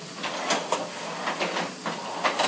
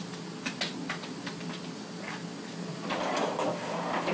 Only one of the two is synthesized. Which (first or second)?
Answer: first